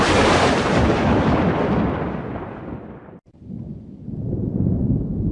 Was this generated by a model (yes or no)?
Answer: no